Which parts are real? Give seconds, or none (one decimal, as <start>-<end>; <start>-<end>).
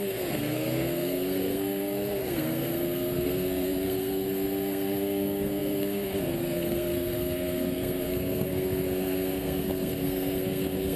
none